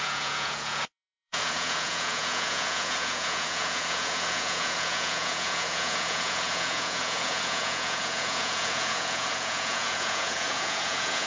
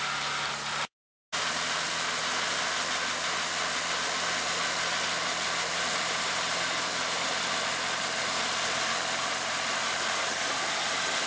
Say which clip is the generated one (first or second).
first